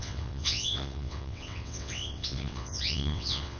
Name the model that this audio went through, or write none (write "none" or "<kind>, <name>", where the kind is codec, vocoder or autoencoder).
vocoder, WaveNeXt